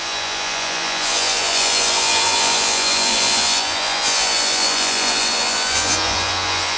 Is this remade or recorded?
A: remade